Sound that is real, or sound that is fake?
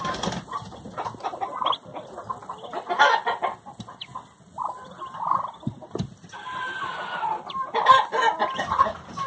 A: real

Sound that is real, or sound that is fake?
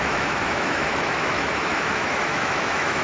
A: fake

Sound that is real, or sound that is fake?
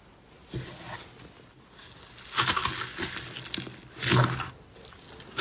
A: real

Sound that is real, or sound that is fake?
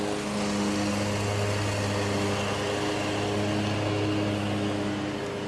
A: real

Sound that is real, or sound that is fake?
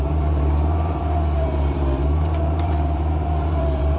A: fake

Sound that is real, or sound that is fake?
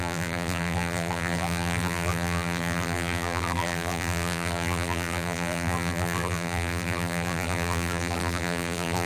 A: fake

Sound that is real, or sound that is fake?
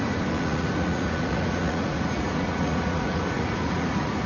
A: fake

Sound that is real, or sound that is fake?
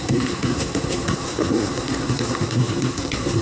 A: fake